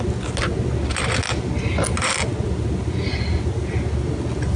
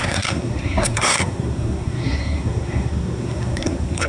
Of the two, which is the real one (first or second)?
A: first